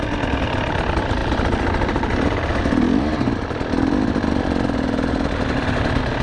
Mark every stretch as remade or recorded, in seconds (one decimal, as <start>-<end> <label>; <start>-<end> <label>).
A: 0.0-6.2 recorded